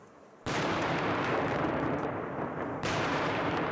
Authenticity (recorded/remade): remade